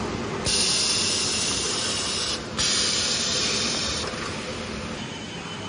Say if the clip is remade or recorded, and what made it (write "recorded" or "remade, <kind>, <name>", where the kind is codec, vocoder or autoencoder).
recorded